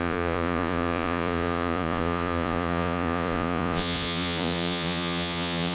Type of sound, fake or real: fake